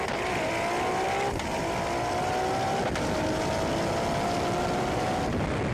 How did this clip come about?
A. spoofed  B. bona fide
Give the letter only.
B